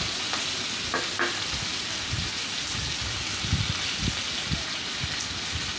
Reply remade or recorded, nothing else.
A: recorded